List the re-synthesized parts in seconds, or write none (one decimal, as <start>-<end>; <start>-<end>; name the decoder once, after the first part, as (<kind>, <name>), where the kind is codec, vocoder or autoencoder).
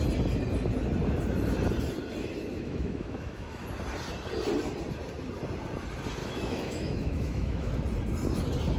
2.5-3.6 (autoencoder, DAC-VAE); 6.2-7.7